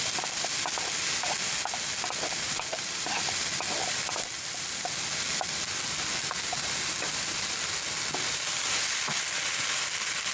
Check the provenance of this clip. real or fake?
real